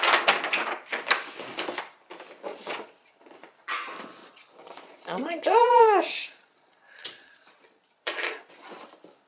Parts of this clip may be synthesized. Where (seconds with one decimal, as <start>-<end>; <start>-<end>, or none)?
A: 2.5-3.5; 4.2-8.5